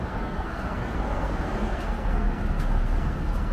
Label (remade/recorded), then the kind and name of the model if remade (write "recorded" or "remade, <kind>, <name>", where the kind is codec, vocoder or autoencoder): remade, codec, SNAC